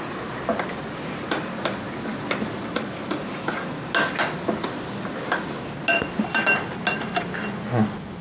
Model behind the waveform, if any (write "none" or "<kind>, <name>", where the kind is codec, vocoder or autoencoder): none